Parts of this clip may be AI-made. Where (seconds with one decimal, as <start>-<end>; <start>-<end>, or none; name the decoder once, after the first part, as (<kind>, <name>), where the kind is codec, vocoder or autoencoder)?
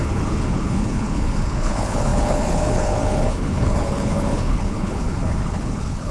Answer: 0.0-6.1 (codec, HILCodec)